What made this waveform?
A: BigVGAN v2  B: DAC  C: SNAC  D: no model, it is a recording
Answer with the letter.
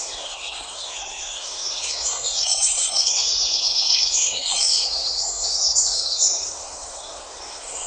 C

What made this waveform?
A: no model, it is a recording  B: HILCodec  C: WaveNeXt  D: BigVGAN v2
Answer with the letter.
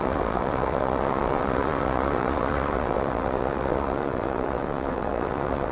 C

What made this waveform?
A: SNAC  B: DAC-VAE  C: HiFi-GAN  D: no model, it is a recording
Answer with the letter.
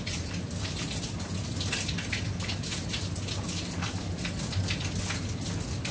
D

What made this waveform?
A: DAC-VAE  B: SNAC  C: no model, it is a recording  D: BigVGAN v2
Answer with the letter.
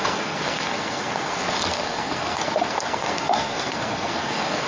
B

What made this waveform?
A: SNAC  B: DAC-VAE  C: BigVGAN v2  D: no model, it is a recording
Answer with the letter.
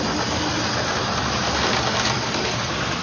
D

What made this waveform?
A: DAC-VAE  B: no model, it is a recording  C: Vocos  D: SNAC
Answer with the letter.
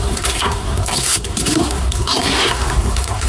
D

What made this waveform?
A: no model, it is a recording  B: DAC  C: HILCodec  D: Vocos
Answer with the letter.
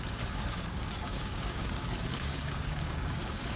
B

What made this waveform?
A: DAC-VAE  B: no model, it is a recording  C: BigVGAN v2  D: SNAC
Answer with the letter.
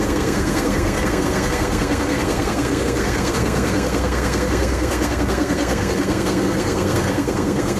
D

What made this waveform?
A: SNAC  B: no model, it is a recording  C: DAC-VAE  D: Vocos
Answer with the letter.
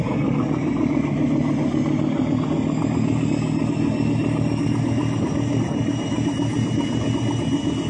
B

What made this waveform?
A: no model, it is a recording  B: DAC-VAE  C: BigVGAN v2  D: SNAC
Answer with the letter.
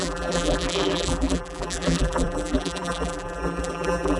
C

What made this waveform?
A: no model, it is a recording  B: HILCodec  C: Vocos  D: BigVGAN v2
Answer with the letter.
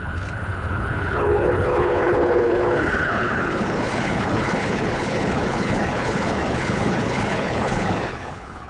B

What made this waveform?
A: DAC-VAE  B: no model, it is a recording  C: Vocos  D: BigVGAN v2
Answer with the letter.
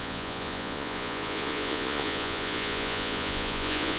C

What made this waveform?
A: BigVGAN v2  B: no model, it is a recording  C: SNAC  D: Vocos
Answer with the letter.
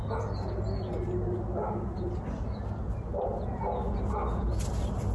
B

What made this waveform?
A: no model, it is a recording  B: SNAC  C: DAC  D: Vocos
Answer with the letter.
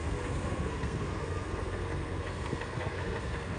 B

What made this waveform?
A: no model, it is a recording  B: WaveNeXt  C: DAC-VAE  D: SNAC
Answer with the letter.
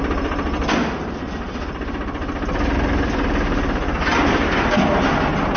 A